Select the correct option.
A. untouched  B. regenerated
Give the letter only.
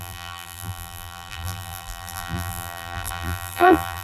B